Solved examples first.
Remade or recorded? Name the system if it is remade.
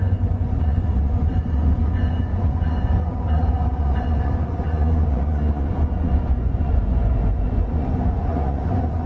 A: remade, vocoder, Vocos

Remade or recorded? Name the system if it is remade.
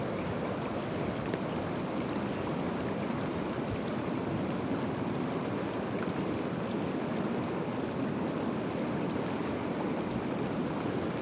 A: recorded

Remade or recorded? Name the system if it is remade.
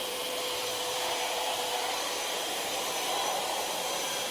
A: remade, vocoder, BigVGAN v2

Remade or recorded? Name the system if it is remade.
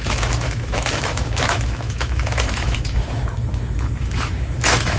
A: remade, autoencoder, DAC-VAE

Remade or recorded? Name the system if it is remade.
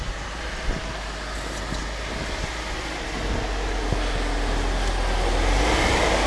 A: recorded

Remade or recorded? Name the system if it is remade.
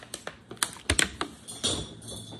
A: recorded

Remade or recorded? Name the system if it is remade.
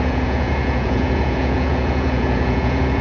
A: remade, vocoder, Vocos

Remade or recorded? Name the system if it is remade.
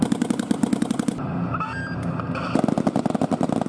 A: recorded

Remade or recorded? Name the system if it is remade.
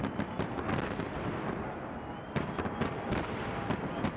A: recorded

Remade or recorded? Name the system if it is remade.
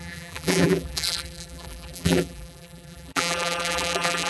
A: remade, vocoder, BigVGAN v2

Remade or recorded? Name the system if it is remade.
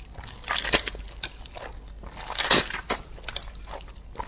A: recorded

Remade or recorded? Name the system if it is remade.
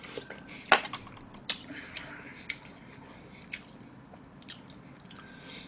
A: recorded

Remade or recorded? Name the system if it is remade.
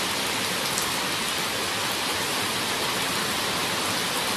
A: recorded